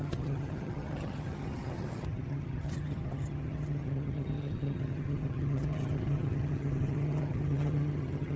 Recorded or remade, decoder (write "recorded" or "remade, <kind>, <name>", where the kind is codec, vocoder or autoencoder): remade, vocoder, HiFi-GAN